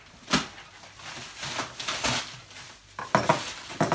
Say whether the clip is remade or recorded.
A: recorded